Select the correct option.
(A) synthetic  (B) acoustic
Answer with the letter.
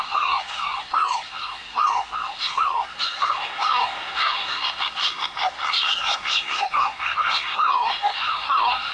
A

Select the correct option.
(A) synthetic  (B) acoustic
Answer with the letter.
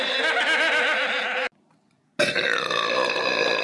B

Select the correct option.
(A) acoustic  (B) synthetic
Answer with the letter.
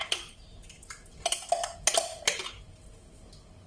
A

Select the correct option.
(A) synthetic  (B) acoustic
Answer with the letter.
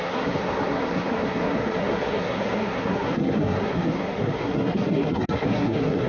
A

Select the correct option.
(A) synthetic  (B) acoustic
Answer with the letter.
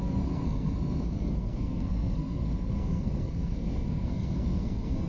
A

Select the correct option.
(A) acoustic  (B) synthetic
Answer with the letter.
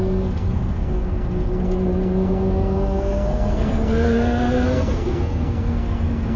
B